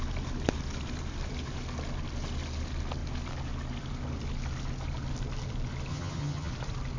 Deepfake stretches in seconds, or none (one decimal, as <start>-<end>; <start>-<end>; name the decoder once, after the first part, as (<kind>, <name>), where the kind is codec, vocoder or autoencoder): 5.9-6.5 (vocoder, HiFi-GAN)